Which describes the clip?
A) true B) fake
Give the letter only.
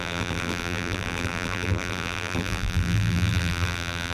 B